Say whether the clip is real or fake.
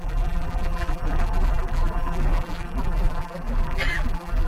fake